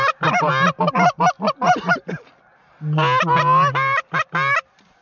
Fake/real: real